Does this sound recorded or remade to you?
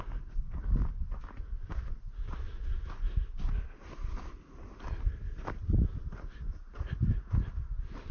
recorded